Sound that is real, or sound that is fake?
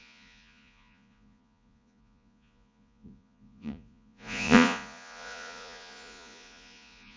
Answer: fake